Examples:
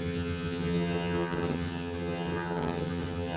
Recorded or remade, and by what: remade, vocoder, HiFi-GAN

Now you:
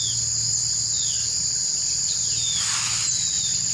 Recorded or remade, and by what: recorded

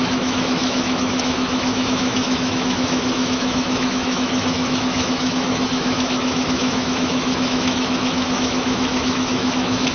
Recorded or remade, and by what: remade, autoencoder, DAC-VAE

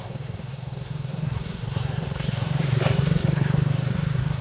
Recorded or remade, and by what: remade, codec, SNAC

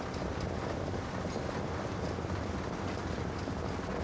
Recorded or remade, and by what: recorded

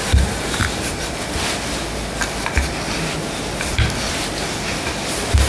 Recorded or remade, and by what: recorded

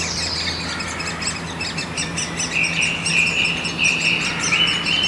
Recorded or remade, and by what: recorded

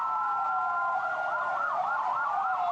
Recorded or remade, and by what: recorded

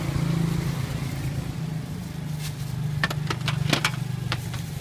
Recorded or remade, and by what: recorded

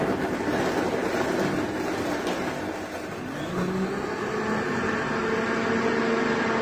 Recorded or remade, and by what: recorded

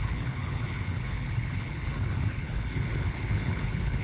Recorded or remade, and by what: remade, codec, HILCodec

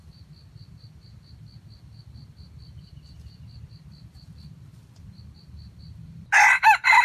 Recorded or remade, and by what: recorded